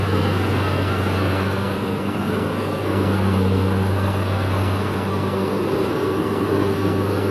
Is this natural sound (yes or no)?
no